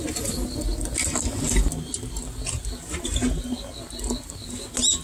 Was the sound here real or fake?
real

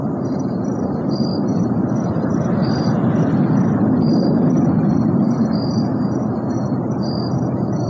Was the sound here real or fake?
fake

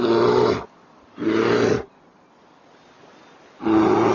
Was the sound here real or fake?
real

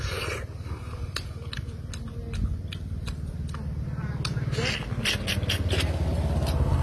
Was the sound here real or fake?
real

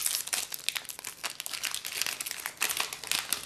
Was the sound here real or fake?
real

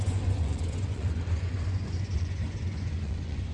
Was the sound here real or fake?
fake